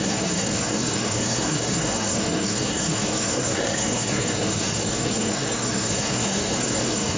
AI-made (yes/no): yes